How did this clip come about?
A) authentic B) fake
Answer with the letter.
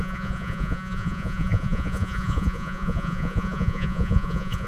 B